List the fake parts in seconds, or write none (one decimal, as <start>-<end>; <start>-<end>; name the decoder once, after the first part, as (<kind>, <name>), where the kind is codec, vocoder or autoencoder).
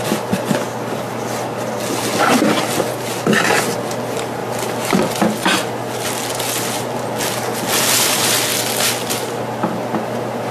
8.5-9.7 (vocoder, BigVGAN v2)